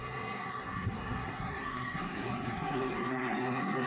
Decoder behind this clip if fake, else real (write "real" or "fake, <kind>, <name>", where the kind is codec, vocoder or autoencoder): fake, codec, SNAC